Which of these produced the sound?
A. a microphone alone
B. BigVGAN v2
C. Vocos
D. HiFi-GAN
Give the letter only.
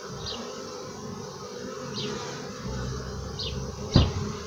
A